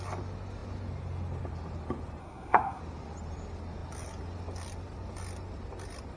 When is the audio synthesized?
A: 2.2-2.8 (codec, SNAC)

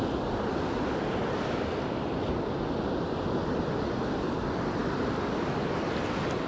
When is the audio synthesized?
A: none

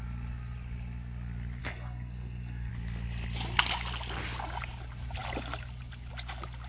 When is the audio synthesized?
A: 1.6-2.7 (codec, SNAC)